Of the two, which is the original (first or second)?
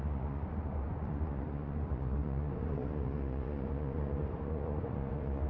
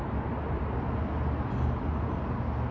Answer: second